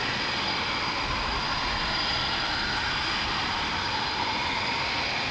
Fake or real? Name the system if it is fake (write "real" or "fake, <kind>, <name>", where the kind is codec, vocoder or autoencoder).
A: real